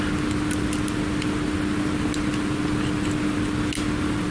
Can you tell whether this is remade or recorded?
recorded